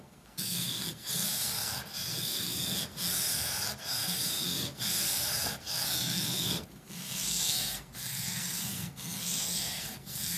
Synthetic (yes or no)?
yes